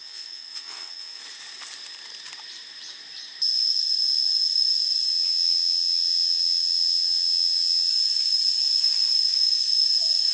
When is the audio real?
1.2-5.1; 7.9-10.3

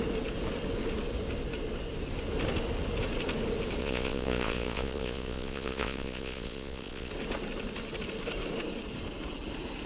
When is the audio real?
0.0-3.8; 7.1-9.9

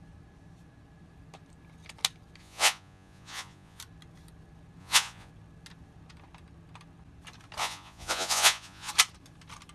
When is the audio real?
0.0-2.4; 3.8-4.8; 5.3-7.6; 8.9-9.7

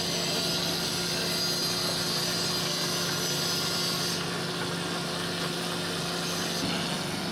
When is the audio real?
0.0-7.3

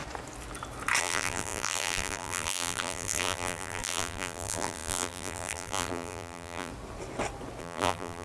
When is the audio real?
0.0-1.0; 6.7-7.6

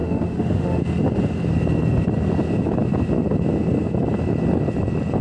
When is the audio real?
0.8-5.2

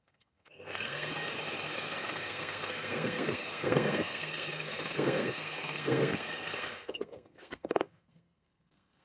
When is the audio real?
1.1-1.7

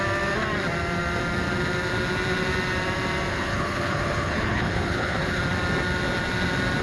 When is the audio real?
0.0-3.3; 5.4-6.8